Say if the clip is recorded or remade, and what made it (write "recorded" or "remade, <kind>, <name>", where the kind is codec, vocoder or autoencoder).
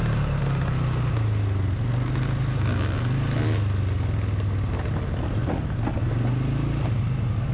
recorded